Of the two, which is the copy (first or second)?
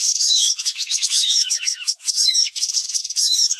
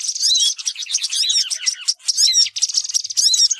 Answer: first